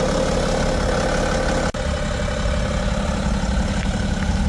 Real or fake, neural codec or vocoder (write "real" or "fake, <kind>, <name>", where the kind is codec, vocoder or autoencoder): real